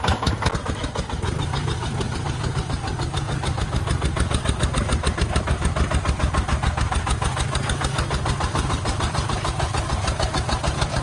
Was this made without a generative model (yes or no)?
yes